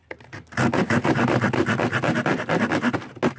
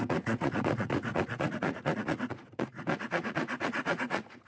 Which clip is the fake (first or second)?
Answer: second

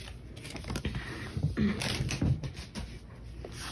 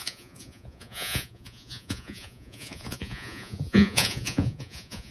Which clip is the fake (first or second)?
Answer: second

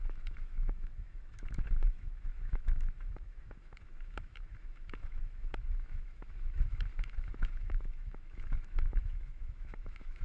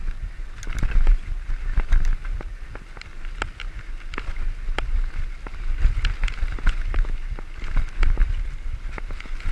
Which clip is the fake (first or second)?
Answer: first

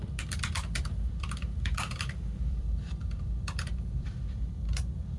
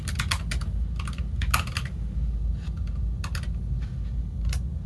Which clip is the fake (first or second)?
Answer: first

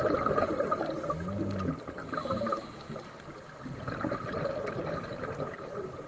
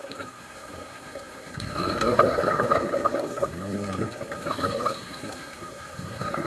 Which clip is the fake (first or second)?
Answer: second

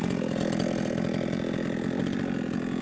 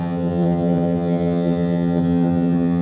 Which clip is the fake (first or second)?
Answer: second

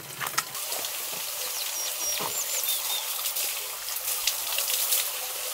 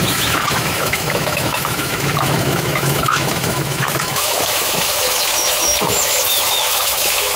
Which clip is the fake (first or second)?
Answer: second